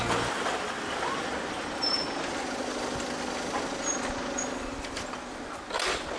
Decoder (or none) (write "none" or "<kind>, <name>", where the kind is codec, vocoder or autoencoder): none